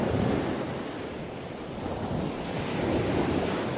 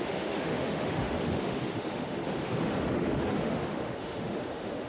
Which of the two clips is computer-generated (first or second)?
second